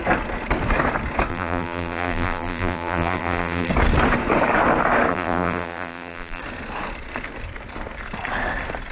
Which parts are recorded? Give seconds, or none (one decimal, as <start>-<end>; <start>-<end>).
0.0-1.3; 3.7-5.1; 6.4-8.9